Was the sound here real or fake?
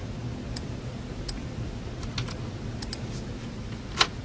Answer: real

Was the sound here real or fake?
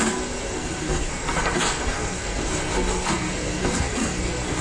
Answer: fake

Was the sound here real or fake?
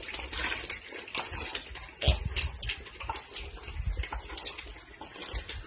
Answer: real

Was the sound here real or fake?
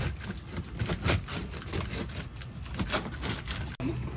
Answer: real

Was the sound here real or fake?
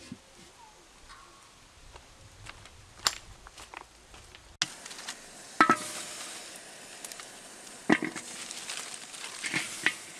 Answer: real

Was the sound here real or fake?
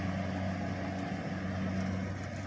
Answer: real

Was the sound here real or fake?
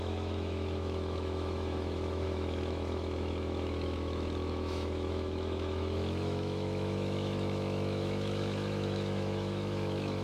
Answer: fake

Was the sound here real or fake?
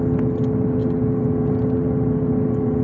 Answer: real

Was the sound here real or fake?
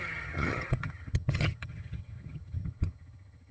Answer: fake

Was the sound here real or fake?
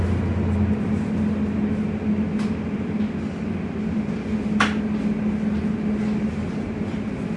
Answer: real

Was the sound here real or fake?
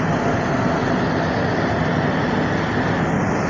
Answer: real